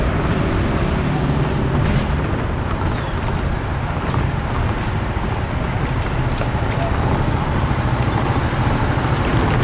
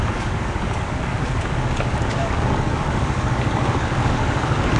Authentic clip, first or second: first